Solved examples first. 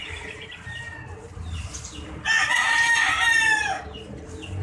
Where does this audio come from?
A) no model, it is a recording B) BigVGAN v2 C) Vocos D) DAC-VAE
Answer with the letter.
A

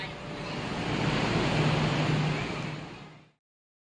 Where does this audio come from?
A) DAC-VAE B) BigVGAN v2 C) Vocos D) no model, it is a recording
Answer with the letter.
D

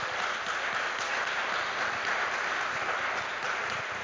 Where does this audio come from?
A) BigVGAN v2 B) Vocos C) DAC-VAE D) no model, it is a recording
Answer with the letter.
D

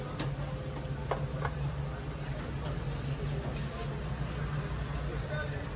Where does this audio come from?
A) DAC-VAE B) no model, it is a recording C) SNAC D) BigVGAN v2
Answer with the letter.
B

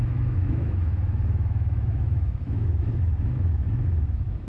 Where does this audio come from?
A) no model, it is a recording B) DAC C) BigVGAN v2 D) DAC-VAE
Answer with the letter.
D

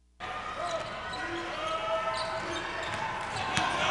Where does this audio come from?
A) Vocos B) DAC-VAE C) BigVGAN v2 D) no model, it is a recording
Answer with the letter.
D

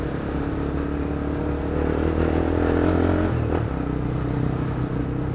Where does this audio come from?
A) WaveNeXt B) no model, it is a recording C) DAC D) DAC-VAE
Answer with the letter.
B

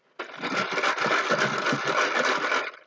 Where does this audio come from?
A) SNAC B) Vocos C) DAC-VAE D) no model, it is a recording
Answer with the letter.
D